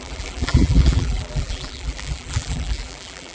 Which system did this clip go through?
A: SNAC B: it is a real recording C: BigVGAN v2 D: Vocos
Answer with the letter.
C